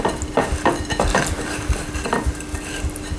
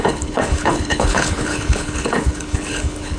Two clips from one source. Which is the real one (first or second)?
first